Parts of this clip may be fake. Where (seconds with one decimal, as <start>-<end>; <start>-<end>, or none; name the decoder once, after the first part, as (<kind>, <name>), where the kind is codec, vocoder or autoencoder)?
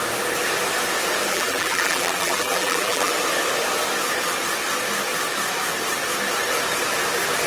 1.3-3.1 (vocoder, BigVGAN v2)